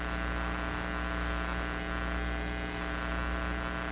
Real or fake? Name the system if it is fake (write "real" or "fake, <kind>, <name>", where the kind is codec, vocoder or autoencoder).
real